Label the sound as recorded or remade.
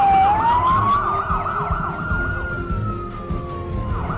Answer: recorded